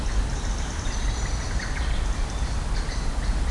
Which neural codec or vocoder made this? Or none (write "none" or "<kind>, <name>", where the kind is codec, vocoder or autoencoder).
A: none